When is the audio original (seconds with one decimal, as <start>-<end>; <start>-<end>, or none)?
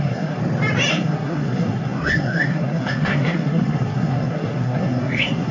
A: 0.4-0.9